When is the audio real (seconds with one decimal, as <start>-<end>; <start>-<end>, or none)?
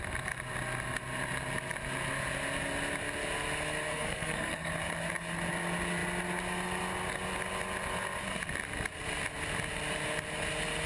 0.0-3.9; 4.7-10.9